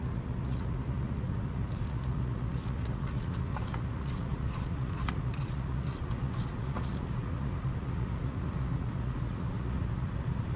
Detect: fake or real fake